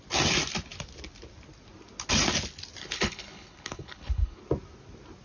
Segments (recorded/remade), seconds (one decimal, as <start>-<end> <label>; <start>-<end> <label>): 0.0-2.8 recorded; 2.8-4.4 remade; 4.4-5.2 recorded